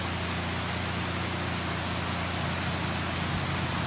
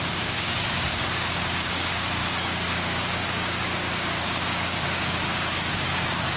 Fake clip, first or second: second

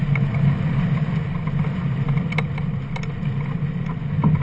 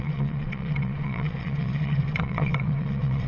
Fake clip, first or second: second